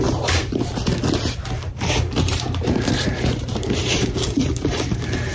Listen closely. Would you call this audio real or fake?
fake